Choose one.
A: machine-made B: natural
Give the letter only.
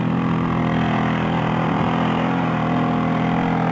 A